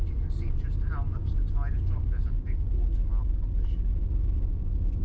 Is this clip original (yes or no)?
yes